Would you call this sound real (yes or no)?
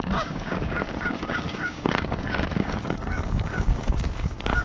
no